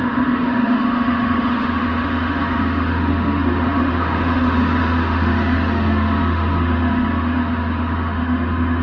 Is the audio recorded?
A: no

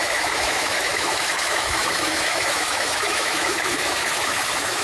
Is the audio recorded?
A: no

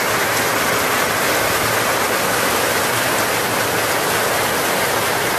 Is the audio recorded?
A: yes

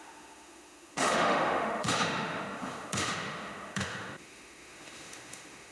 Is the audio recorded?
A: no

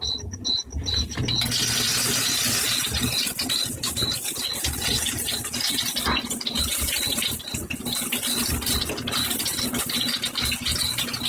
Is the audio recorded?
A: yes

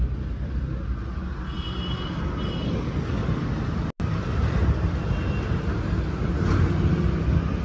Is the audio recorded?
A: yes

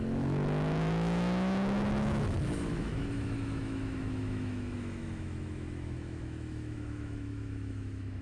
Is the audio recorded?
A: no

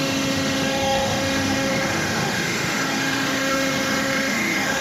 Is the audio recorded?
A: no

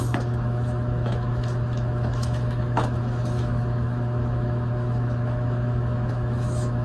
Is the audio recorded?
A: no